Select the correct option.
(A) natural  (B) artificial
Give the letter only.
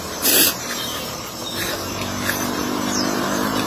B